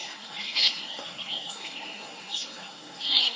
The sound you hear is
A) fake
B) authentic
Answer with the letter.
A